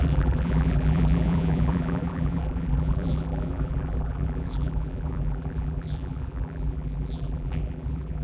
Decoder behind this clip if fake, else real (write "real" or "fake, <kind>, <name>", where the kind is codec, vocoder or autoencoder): fake, vocoder, BigVGAN v2